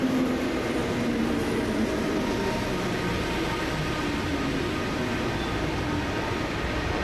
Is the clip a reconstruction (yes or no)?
no